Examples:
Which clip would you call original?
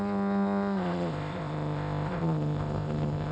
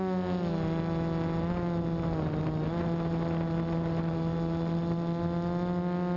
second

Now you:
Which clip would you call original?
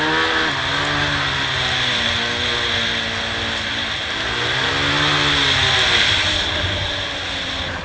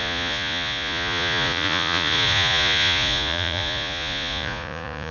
first